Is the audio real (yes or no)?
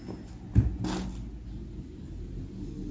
yes